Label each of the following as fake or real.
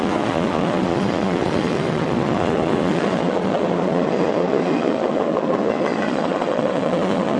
fake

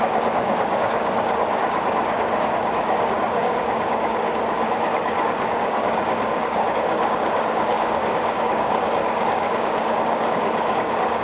fake